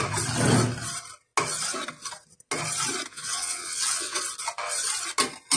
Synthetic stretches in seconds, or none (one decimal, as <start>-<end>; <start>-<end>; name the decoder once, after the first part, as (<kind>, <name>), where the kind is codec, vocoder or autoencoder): 3.1-4.2 (vocoder, WaveNeXt)